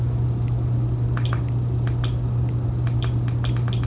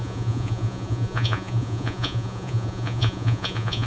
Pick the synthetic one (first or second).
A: second